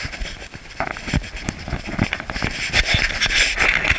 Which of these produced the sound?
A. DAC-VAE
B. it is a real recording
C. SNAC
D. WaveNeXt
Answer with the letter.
B